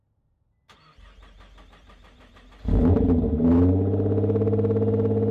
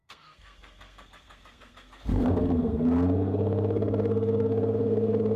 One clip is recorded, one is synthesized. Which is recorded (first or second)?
first